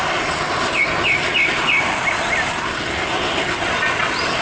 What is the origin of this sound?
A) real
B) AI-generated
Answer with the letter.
A